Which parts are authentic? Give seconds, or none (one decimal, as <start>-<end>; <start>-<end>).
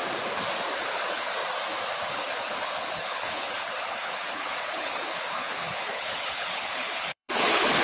0.0-0.7; 1.3-2.1